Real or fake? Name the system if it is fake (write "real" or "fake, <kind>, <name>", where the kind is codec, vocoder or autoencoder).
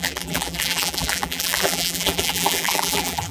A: fake, vocoder, BigVGAN v2